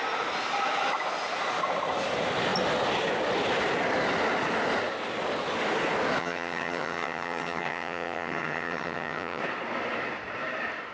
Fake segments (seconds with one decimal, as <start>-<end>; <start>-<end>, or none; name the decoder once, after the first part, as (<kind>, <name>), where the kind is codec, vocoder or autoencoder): 6.2-9.4 (vocoder, HiFi-GAN)